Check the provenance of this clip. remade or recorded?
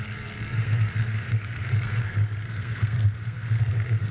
remade